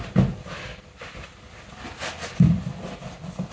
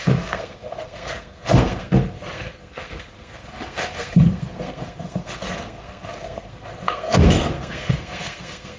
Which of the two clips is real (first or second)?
first